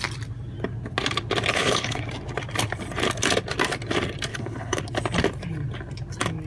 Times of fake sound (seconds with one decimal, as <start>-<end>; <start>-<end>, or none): 1.5-2.0; 4.3-4.8